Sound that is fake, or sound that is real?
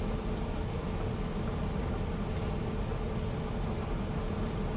real